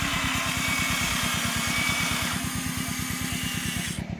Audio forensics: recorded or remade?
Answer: recorded